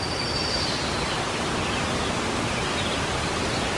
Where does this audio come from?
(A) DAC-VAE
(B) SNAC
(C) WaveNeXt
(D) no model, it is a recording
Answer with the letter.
D